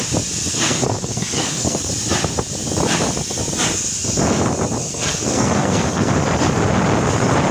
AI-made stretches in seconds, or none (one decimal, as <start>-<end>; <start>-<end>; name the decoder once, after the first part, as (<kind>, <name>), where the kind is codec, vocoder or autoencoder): 0.5-1.9 (codec, SNAC); 4.8-6.1